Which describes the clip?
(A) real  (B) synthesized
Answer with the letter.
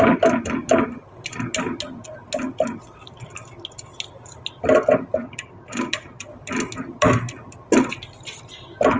A